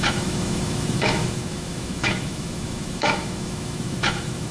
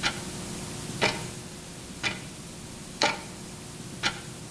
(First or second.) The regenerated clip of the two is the first